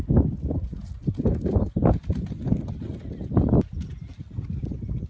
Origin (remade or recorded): recorded